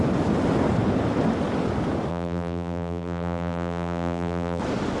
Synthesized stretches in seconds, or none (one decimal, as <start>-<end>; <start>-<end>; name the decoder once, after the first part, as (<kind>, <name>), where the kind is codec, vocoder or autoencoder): 2.1-4.6 (vocoder, BigVGAN v2)